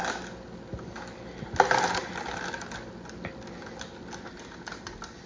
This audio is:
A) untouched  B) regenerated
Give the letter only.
A